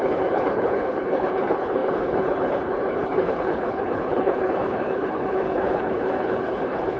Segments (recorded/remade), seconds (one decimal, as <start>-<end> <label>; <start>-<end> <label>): 0.0-7.0 remade